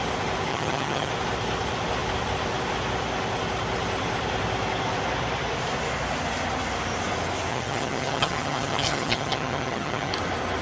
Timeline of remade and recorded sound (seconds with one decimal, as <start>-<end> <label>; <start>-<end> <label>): 0.0-0.5 recorded; 0.5-1.1 remade; 1.1-7.5 recorded; 7.5-10.1 remade; 10.1-10.6 recorded